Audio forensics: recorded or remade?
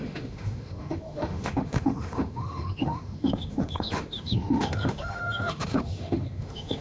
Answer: remade